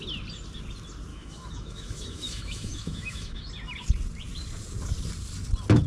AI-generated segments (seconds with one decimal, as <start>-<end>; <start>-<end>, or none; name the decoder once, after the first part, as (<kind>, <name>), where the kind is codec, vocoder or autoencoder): 1.1-3.5 (autoencoder, DAC-VAE)